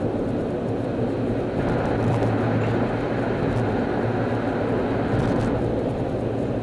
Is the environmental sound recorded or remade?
recorded